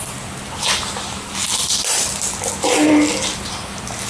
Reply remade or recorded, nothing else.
recorded